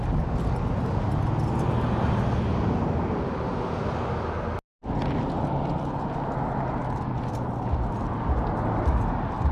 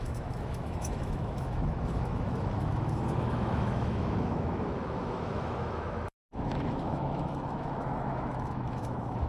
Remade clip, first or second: second